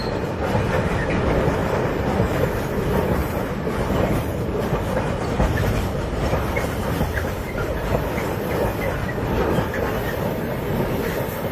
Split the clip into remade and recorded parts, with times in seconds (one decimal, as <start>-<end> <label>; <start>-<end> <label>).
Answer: 0.0-1.6 recorded; 1.6-2.5 remade; 2.5-3.2 recorded; 3.2-8.0 remade; 8.0-11.5 recorded